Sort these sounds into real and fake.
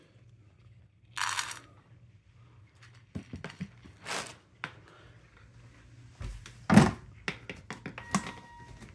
real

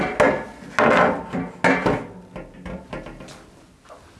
real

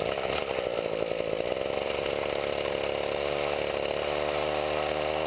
real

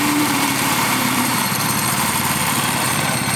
fake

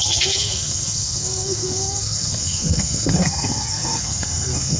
fake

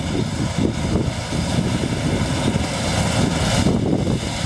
real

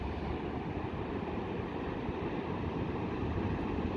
real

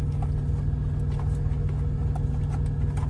real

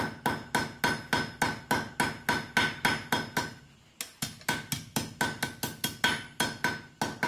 real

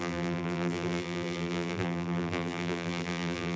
fake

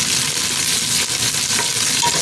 real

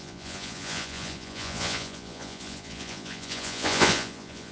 fake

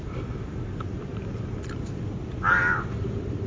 real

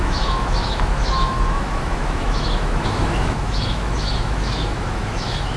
fake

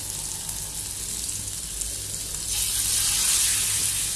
real